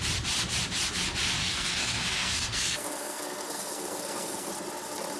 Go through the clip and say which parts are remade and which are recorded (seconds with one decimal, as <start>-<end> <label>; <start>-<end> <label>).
0.0-1.4 recorded; 1.4-4.5 remade; 4.5-5.2 recorded